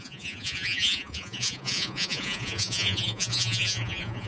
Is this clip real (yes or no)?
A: no